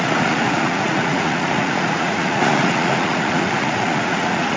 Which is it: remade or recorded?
remade